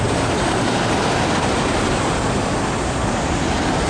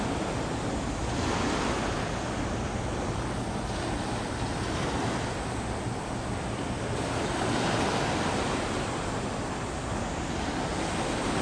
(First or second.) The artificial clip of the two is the first